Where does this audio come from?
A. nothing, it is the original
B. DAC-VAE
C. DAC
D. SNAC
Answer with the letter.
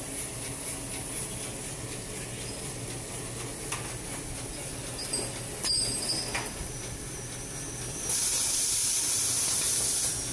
A